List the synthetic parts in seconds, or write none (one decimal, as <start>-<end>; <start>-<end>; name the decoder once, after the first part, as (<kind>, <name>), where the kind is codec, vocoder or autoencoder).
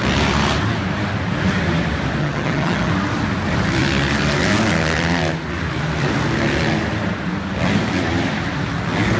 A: 2.2-2.9 (vocoder, HiFi-GAN)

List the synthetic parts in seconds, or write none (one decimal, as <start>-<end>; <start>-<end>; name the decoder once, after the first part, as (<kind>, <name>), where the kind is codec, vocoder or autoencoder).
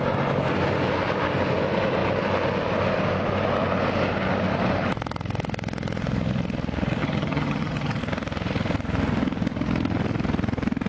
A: 7.0-8.0 (vocoder, HiFi-GAN)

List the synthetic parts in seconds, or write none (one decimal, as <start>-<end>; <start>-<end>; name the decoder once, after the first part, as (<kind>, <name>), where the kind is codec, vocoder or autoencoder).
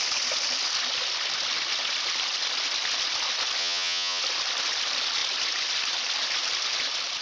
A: 3.6-4.2 (vocoder, HiFi-GAN)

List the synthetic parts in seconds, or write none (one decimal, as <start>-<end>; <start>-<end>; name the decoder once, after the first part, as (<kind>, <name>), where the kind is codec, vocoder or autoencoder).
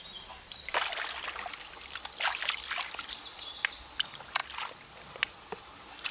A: none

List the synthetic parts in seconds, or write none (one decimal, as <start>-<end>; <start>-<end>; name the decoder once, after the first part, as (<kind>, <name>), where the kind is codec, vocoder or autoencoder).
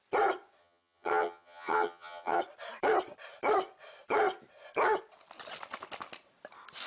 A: 0.6-2.4 (vocoder, HiFi-GAN)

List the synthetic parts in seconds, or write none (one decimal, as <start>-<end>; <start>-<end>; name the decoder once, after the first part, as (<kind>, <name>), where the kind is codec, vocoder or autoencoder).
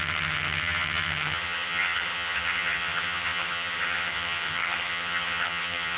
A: 0.0-6.0 (vocoder, HiFi-GAN)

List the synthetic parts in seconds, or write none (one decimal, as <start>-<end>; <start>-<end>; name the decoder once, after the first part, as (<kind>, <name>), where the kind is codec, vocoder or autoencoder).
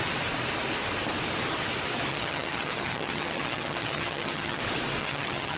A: 2.1-4.6 (vocoder, HiFi-GAN); 5.0-5.6